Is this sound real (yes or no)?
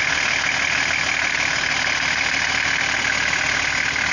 yes